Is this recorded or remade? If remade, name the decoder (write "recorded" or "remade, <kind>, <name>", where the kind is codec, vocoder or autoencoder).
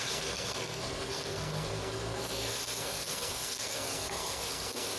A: remade, codec, SNAC